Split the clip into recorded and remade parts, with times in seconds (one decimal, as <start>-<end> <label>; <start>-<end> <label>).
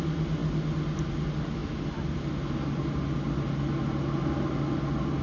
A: 0.0-5.2 recorded